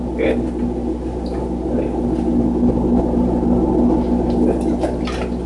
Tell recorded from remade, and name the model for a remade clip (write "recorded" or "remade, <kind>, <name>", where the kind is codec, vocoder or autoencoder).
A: recorded